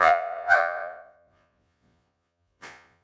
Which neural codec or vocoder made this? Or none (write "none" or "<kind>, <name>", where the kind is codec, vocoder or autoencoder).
vocoder, Vocos